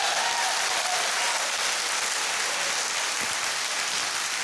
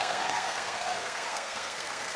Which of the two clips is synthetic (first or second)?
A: second